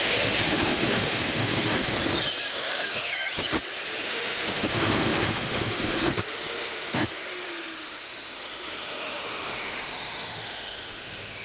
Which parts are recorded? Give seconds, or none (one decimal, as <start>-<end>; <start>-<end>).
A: 1.9-2.5; 3.1-4.0